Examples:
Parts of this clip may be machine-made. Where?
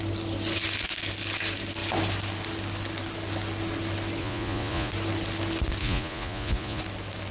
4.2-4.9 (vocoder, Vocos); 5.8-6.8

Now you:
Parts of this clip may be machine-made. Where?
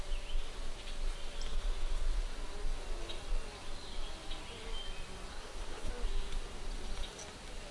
5.3-5.9 (codec, SNAC)